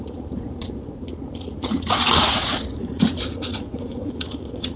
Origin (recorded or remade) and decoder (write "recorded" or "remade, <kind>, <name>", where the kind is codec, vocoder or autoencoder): remade, vocoder, Vocos